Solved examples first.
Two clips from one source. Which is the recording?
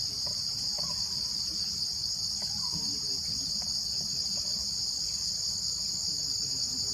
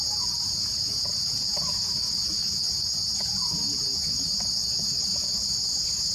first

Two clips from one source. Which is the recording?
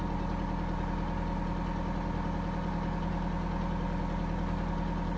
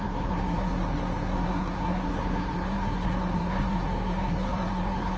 first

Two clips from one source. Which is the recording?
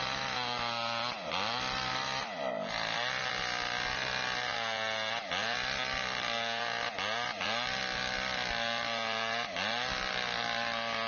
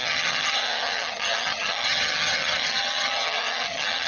first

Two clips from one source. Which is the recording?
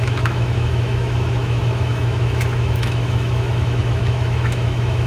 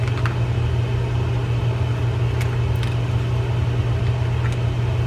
second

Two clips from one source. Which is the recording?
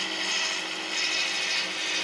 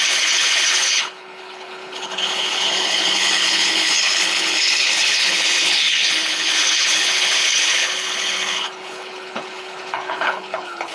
first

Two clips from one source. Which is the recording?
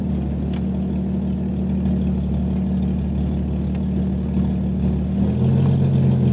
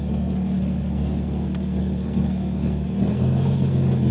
first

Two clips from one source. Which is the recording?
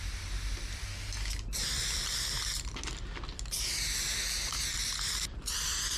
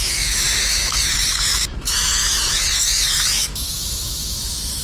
first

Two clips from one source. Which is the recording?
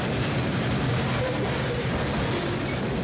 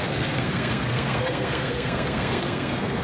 first